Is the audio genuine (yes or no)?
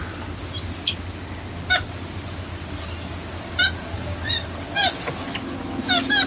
yes